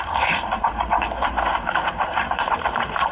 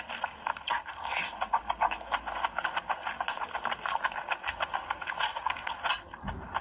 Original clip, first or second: second